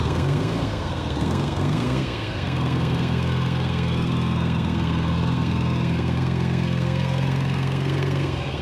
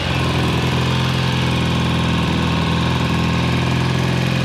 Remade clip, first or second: first